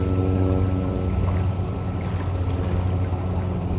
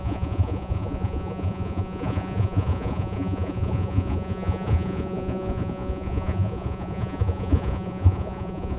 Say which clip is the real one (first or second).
first